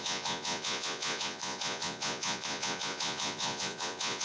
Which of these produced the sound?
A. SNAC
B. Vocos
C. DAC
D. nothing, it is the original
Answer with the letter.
B